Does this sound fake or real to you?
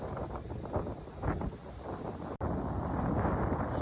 real